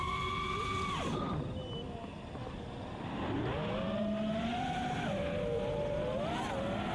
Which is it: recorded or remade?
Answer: recorded